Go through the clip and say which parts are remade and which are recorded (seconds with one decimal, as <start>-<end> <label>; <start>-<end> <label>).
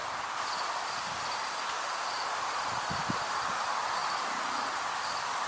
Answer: 0.0-3.3 recorded; 3.3-5.5 remade